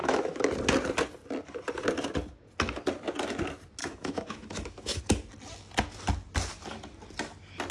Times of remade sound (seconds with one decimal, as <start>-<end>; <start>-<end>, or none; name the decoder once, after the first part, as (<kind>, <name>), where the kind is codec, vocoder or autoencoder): 0.0-0.5 (autoencoder, DAC-VAE); 3.8-5.0